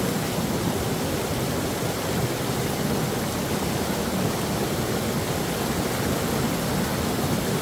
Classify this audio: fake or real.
real